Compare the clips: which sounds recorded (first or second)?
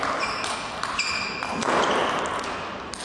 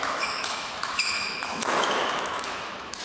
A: first